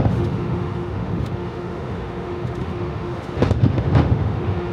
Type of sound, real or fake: fake